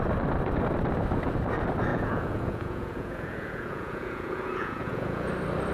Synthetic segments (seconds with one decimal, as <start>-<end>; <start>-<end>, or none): 1.9-5.3